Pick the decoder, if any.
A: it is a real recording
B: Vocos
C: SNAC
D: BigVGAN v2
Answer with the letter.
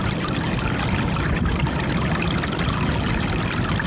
A